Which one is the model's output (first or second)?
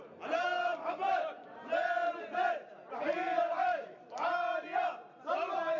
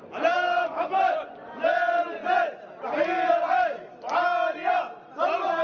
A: first